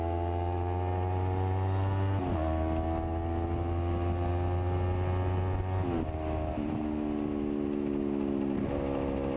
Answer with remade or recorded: recorded